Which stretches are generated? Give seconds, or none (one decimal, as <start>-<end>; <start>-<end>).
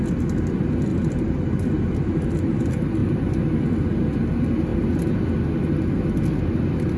0.9-2.6; 3.0-3.7